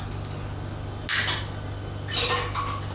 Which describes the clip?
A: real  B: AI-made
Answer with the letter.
A